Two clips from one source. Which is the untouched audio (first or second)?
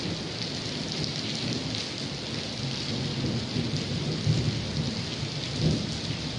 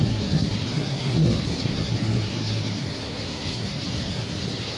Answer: first